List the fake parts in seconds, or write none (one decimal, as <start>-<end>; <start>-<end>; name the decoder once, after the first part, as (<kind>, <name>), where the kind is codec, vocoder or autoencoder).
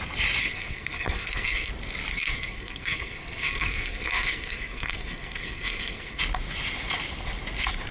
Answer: 0.4-1.7 (codec, SNAC); 2.1-6.2